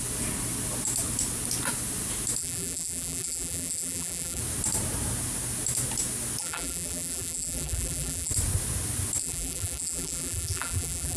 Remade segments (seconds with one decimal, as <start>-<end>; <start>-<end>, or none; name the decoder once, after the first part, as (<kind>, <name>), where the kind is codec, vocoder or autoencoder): 2.4-4.4 (vocoder, BigVGAN v2); 6.4-8.3; 9.2-11.2